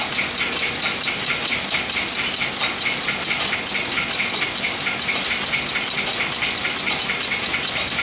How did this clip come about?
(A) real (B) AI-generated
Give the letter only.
A